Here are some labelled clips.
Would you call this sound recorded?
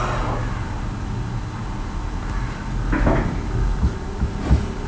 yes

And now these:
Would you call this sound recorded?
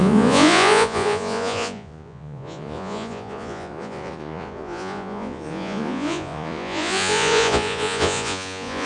no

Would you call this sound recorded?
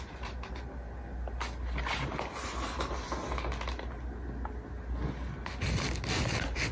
yes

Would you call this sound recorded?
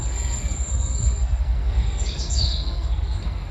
no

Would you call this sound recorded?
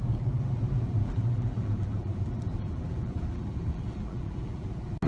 no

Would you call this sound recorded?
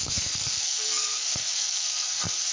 no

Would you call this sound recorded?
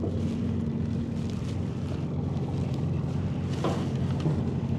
yes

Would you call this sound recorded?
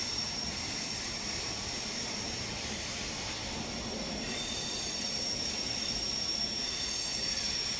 no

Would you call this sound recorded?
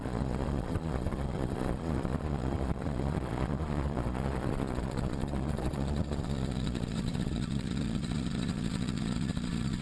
no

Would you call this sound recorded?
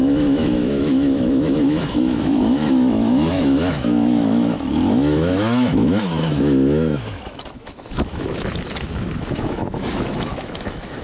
no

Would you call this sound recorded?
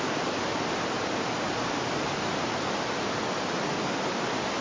yes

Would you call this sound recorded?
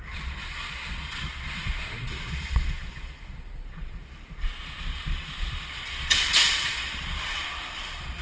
no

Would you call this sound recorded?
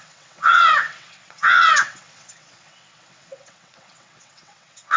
no